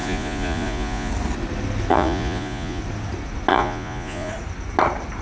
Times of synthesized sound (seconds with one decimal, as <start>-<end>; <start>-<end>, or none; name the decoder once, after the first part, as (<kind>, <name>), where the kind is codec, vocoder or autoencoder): 0.0-1.1 (vocoder, Vocos); 1.9-2.8; 3.5-4.3